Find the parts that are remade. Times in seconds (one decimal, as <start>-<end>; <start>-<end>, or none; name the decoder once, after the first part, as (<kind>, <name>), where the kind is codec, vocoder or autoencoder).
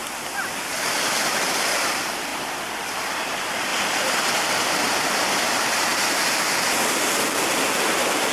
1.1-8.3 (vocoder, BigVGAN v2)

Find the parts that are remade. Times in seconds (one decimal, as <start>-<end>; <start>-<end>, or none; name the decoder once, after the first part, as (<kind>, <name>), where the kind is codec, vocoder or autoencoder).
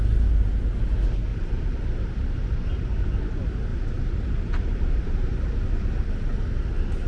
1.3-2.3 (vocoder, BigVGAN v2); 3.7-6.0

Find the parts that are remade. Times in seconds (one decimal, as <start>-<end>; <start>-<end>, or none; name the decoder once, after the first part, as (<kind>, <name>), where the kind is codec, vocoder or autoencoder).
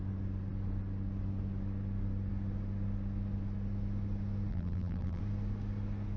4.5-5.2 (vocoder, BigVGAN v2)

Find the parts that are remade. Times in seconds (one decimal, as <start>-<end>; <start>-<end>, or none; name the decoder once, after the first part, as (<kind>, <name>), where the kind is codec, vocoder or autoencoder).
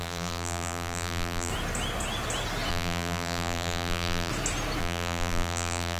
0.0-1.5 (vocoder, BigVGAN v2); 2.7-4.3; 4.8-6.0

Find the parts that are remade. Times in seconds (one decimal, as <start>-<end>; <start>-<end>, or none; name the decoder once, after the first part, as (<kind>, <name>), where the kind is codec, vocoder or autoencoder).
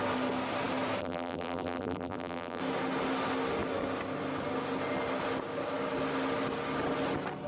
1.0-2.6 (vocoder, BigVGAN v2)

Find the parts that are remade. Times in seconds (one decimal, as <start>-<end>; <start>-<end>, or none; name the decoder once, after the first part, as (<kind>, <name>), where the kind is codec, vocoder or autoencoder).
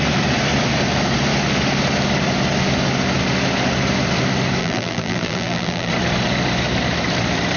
4.6-5.9 (vocoder, BigVGAN v2)